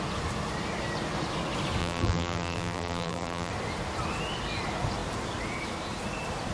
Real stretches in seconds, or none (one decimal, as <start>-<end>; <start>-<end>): 0.0-1.8; 3.5-6.5